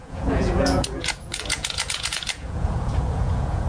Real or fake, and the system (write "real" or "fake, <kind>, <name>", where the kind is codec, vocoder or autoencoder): fake, vocoder, Vocos